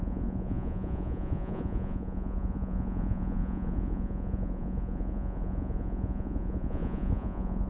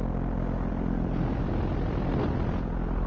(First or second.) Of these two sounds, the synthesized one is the first